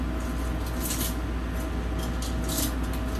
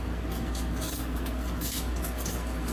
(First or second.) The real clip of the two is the first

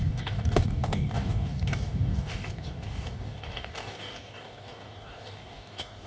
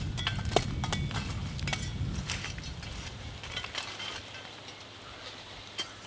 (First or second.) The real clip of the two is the second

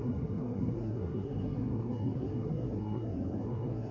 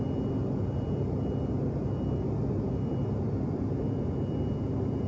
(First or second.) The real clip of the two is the second